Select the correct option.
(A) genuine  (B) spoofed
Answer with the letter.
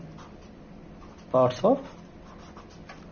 A